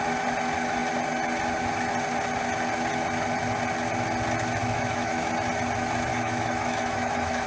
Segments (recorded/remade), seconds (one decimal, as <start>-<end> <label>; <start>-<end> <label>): 0.0-4.6 recorded; 4.6-5.3 remade; 5.3-6.1 recorded; 6.1-7.5 remade